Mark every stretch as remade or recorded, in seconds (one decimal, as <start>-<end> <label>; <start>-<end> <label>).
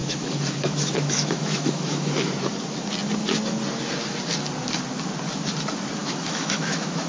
0.0-2.1 remade; 2.1-6.0 recorded; 6.0-7.1 remade